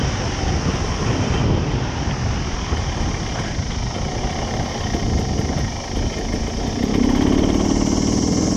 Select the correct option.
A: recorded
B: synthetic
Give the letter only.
A